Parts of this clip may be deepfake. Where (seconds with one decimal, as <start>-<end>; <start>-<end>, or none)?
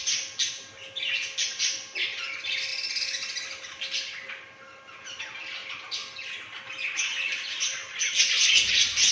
none